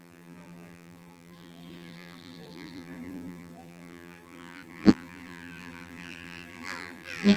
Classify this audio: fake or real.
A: fake